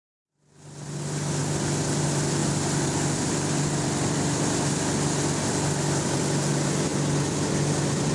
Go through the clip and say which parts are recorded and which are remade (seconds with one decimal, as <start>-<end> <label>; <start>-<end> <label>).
0.0-2.4 recorded; 2.4-4.7 remade; 4.7-8.1 recorded